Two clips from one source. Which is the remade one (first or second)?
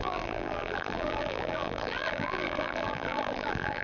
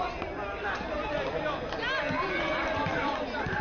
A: first